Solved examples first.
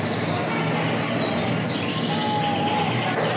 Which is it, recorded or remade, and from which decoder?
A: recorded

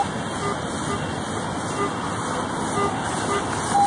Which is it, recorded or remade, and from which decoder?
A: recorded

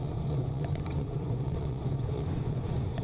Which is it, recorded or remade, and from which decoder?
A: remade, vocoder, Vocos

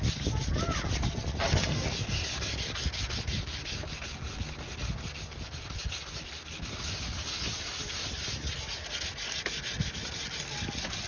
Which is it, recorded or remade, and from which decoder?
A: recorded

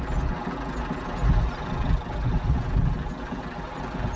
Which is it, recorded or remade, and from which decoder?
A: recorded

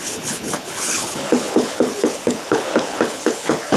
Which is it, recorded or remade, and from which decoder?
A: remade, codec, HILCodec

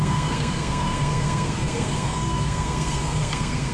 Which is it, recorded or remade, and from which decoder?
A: remade, codec, SNAC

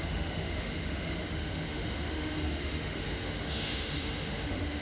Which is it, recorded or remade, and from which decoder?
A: remade, autoencoder, DAC-VAE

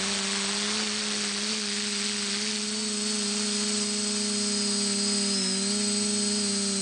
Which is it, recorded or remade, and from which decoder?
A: recorded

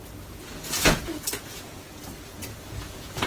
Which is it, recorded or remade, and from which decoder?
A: remade, vocoder, Vocos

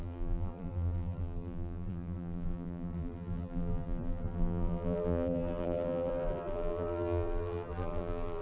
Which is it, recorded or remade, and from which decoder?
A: remade, vocoder, BigVGAN v2